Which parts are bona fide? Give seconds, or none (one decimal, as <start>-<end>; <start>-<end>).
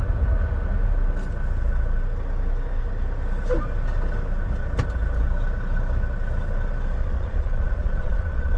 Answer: 0.0-7.0